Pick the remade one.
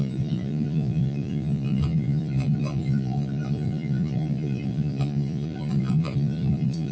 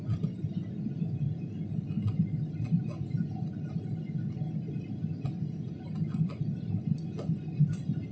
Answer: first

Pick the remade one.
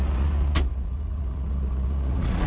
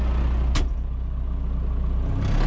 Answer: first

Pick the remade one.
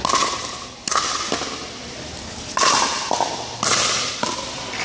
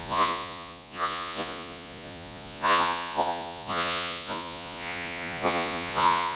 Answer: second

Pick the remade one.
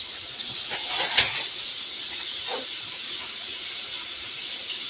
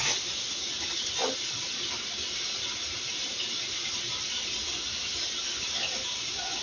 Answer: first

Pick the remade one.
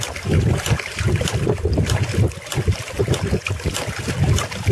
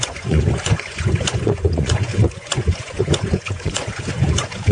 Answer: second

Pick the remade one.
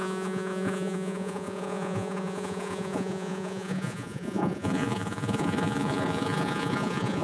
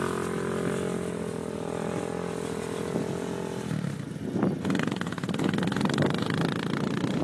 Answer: first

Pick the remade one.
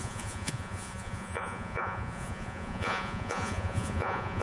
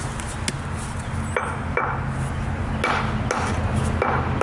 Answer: first